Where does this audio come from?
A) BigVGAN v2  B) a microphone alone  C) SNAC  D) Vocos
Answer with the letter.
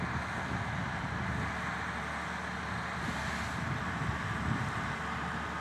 B